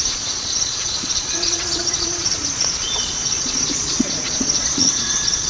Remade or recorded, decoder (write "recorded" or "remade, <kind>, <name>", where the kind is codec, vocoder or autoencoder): remade, vocoder, Vocos